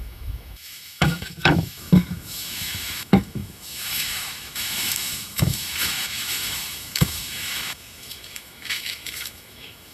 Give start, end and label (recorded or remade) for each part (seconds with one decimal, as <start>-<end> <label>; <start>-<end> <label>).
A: 0.0-9.9 remade